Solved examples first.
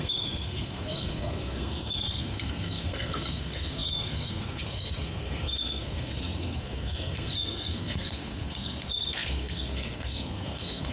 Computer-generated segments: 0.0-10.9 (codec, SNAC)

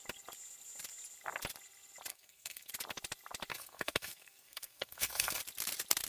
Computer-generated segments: 2.1-2.7 (codec, SNAC); 3.5-5.4

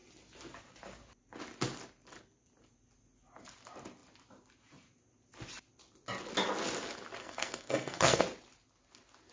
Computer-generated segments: 7.2-8.2 (codec, SNAC)